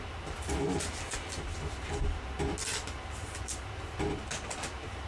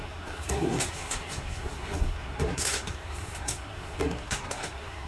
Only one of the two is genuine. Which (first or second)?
first